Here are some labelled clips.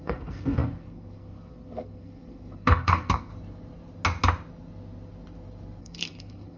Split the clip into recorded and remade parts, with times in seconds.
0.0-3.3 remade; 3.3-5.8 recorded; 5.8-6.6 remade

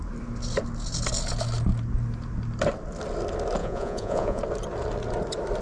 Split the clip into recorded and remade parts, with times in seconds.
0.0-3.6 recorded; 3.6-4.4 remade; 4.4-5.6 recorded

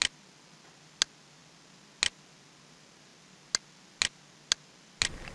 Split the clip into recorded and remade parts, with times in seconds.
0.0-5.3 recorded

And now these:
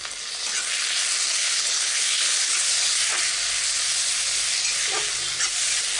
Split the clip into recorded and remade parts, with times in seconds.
0.0-1.4 recorded; 1.4-2.5 remade; 2.5-6.0 recorded

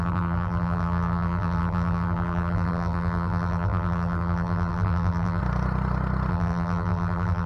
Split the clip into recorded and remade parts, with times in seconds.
0.0-5.4 remade; 5.4-6.3 recorded; 6.3-7.5 remade

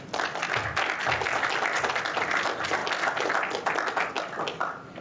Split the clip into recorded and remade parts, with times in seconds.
0.0-5.0 recorded

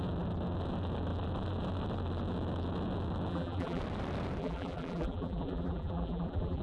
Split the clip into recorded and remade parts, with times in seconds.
0.0-3.3 recorded; 3.3-3.8 remade; 3.8-4.4 recorded; 4.4-6.6 remade